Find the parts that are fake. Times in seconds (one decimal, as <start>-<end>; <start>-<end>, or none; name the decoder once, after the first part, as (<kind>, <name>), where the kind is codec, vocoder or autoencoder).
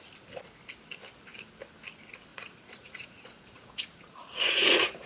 2.3-5.1 (vocoder, Vocos)